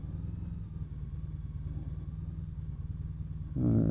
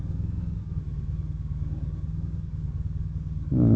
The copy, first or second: second